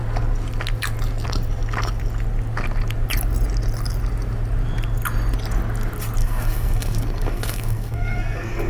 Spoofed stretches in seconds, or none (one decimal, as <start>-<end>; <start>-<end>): 6.2-8.7